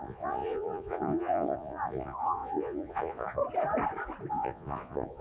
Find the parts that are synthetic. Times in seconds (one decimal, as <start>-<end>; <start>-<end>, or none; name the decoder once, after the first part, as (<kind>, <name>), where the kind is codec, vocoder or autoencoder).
0.0-3.4 (vocoder, Vocos); 4.3-5.2